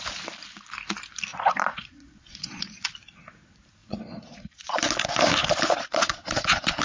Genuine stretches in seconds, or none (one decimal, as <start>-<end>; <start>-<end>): 0.0-1.3; 2.9-3.8; 4.8-5.4